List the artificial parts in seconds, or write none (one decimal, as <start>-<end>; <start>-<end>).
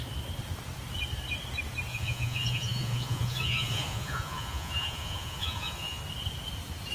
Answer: 1.9-6.0